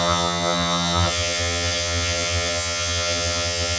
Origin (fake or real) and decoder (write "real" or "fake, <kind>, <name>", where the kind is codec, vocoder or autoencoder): fake, vocoder, HiFi-GAN